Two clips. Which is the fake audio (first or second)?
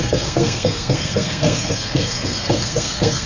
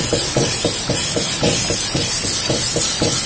first